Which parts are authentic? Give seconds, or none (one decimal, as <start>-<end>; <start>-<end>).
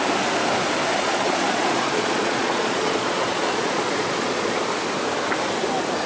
0.0-0.9; 4.6-6.1